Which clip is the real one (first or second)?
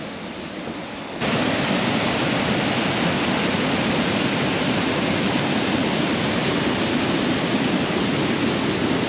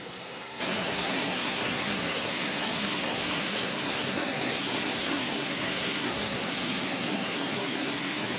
first